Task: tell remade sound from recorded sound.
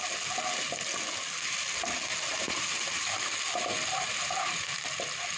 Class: recorded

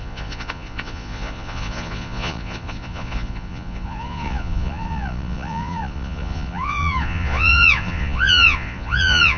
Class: remade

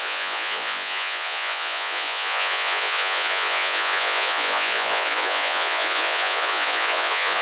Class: remade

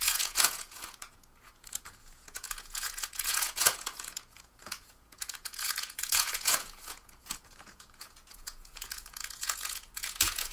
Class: remade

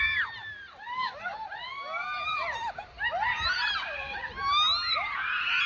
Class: recorded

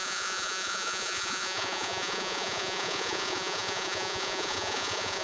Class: remade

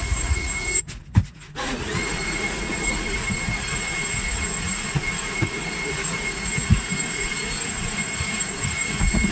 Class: remade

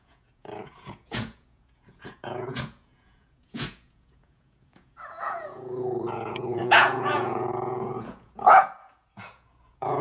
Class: remade